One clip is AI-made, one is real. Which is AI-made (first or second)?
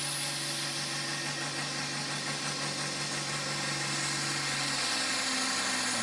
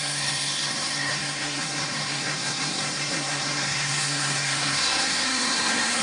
second